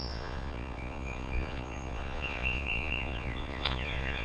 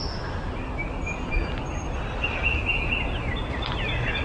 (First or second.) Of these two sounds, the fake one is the first